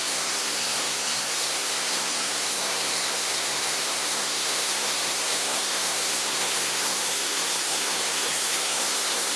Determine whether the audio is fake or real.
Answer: fake